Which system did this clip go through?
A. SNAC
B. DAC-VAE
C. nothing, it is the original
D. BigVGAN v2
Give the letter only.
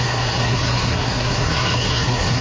A